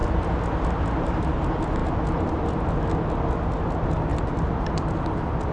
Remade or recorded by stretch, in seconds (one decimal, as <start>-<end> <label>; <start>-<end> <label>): 0.0-5.5 recorded